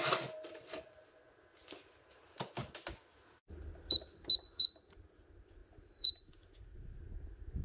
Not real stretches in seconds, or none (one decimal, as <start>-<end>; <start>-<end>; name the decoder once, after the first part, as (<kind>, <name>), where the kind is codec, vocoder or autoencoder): 5.6-6.3 (vocoder, BigVGAN v2)